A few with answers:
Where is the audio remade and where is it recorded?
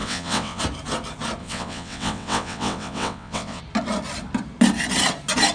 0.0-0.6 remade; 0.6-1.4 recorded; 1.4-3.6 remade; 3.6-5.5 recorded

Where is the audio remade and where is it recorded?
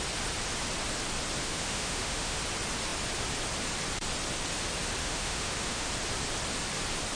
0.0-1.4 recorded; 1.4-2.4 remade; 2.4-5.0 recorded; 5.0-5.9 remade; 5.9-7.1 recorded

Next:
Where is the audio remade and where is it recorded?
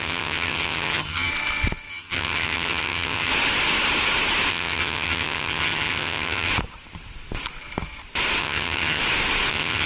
0.0-1.3 remade; 1.3-1.9 recorded; 1.9-3.3 remade; 3.3-4.5 recorded; 4.5-6.5 remade; 6.5-8.4 recorded; 8.4-9.0 remade; 9.0-9.5 recorded; 9.5-9.9 remade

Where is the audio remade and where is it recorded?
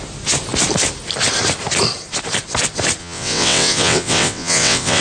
0.0-3.0 recorded; 3.0-5.0 remade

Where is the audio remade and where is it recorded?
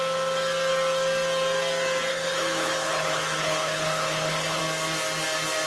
0.0-2.1 recorded; 2.1-4.6 remade; 4.6-5.7 recorded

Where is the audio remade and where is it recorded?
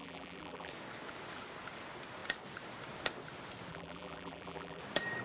0.0-0.7 remade; 0.7-3.7 recorded; 3.7-4.8 remade; 4.8-5.2 recorded